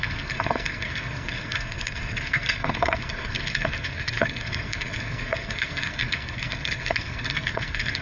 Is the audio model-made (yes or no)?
yes